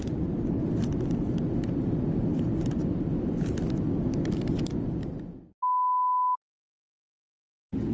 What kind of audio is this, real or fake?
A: real